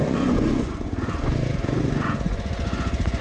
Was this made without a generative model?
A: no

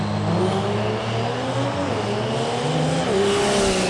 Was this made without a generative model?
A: yes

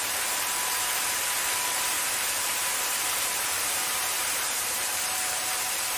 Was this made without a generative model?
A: no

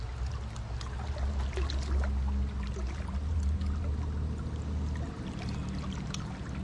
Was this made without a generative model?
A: yes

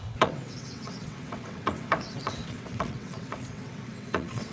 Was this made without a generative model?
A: no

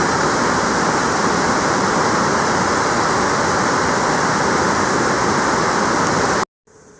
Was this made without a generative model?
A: yes